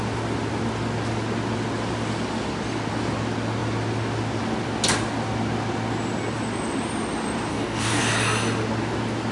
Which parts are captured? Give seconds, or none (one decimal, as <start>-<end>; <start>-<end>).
0.0-7.5; 8.0-9.3